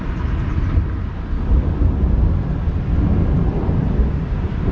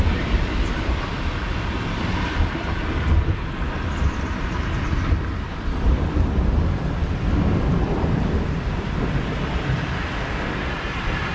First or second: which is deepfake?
second